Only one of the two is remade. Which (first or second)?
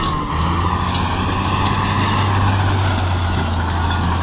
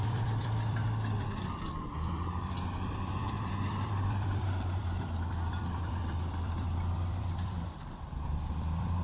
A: second